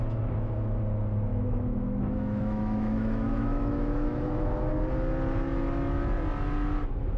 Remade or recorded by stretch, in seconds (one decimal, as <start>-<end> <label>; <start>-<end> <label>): 0.0-1.3 recorded; 1.3-4.7 remade; 4.7-7.2 recorded